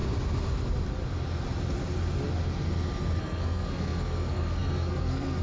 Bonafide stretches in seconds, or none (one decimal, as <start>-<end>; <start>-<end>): 0.0-3.2